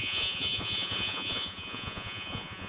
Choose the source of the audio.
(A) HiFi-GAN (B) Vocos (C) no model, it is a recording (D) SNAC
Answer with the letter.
B